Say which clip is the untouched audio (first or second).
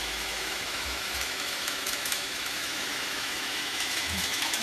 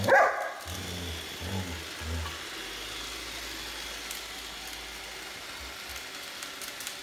second